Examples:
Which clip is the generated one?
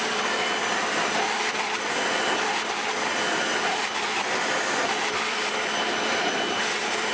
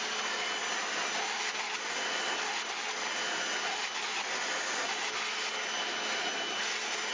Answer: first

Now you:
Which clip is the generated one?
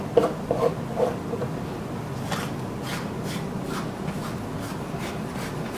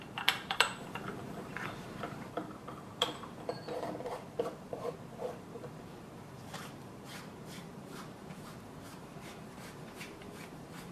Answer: second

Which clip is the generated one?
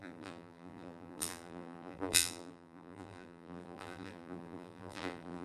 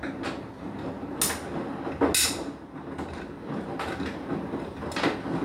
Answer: first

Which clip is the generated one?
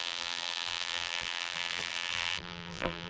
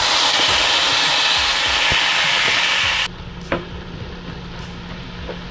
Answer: first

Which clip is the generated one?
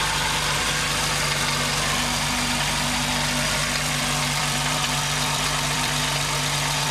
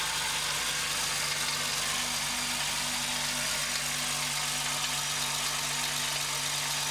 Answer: first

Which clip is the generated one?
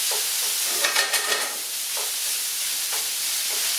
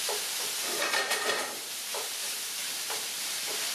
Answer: second